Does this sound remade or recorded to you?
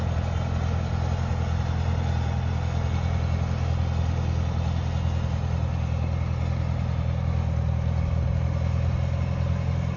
recorded